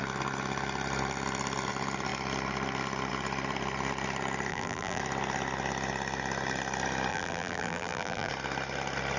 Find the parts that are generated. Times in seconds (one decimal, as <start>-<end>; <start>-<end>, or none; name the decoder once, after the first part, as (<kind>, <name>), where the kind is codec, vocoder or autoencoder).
4.5-5.0 (vocoder, BigVGAN v2); 7.1-8.3